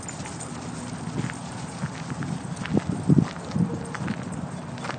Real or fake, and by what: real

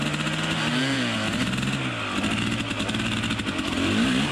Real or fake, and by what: real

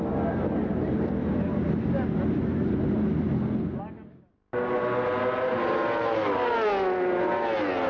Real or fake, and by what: real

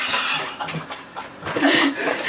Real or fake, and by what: fake, vocoder, BigVGAN v2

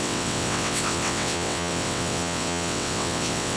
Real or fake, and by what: fake, vocoder, WaveNeXt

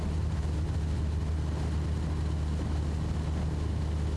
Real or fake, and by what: real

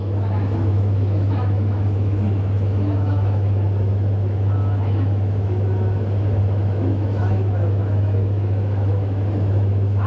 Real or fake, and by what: fake, autoencoder, DAC-VAE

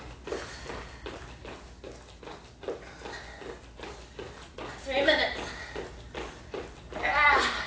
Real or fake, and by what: real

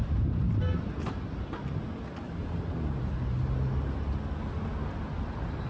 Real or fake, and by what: real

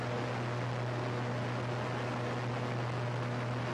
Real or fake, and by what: real